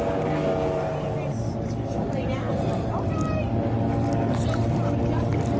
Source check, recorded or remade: recorded